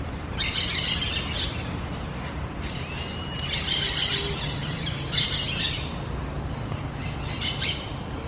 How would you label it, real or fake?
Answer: real